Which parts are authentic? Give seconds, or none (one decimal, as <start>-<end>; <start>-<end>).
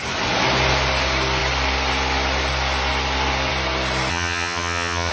0.0-4.1